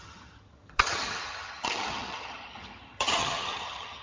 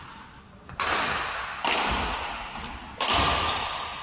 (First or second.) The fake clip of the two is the first